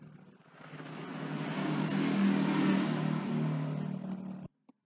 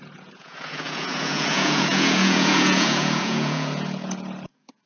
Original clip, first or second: first